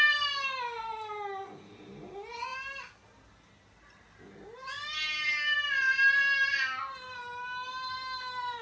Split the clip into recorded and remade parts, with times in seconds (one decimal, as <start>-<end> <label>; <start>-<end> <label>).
0.0-8.6 recorded